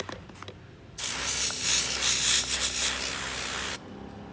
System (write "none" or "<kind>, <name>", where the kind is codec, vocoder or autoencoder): none